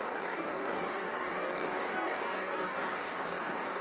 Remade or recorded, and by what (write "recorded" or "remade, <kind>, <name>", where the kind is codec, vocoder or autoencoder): remade, codec, DAC